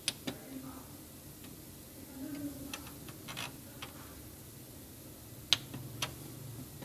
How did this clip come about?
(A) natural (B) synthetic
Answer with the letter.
A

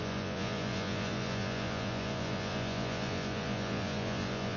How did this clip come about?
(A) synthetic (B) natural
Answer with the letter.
A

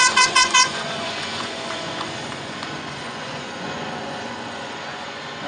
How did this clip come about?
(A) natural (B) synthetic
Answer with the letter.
B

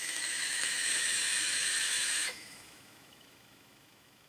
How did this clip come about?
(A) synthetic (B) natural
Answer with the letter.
A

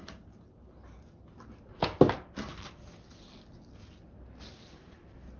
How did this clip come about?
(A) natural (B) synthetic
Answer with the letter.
A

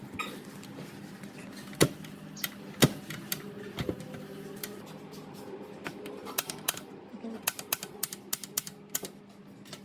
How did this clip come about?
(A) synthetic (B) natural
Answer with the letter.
B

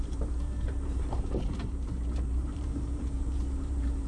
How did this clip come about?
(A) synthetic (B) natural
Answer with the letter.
A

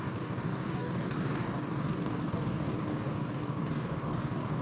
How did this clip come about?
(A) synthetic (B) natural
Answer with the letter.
A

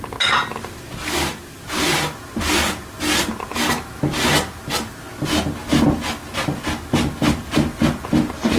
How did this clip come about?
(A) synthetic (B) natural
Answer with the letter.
B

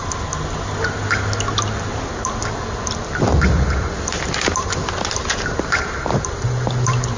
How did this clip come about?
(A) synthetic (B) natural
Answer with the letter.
B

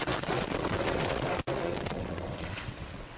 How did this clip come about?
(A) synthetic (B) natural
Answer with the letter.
A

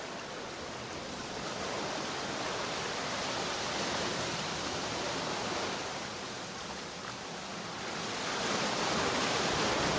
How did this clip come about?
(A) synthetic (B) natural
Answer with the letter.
B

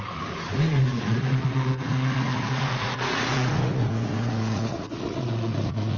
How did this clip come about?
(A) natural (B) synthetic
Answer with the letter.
B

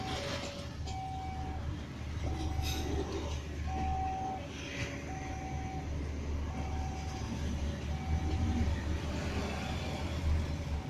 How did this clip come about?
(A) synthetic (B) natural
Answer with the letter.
B